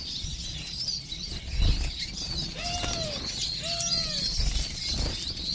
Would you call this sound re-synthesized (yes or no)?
no